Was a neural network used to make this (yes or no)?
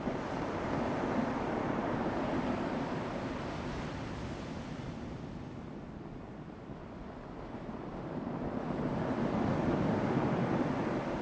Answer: no